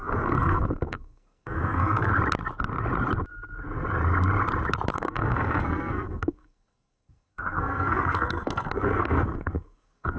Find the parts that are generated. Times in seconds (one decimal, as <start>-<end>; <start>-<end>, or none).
0.0-2.1; 4.9-10.2